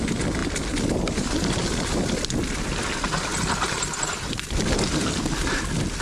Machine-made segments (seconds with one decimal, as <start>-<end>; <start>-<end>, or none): none